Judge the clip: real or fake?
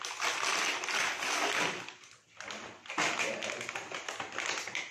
real